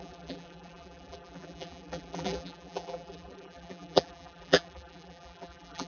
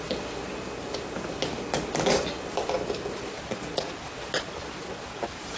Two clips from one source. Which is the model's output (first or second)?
first